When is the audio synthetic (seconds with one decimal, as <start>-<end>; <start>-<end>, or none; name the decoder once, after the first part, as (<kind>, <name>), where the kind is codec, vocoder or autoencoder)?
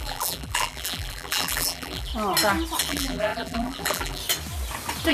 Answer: 0.0-2.1 (vocoder, BigVGAN v2); 2.8-4.2